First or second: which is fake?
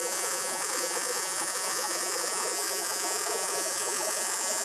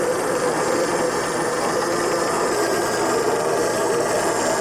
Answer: first